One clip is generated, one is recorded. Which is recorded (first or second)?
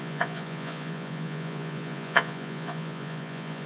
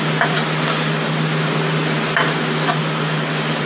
second